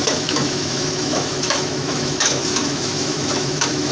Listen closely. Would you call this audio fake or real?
fake